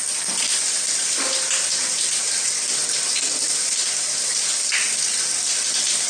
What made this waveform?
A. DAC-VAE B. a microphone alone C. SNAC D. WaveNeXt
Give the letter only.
B